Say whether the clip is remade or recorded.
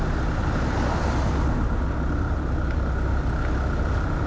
recorded